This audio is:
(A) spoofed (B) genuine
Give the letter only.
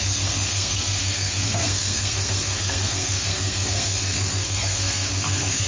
A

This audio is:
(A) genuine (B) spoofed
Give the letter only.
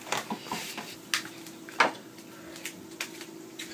A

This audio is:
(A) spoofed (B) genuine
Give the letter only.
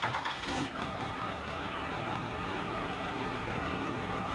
A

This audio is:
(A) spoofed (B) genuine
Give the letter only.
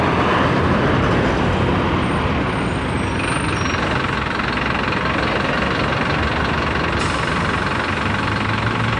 B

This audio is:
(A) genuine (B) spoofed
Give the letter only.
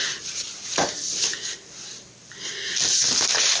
A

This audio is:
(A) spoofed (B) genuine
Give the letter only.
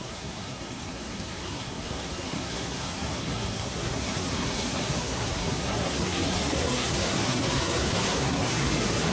A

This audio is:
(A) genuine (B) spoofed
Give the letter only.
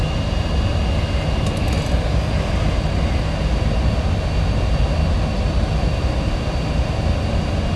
A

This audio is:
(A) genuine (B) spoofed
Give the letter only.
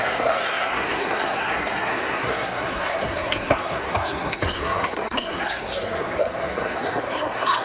B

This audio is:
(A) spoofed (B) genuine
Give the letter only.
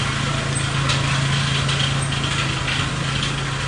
B